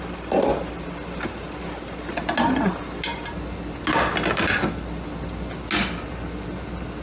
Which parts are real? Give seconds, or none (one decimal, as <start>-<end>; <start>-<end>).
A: 0.0-7.0